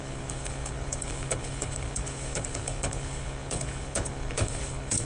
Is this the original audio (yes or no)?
no